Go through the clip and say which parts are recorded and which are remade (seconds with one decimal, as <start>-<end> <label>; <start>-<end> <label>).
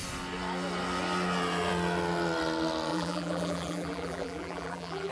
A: 0.0-2.9 recorded; 2.9-5.1 remade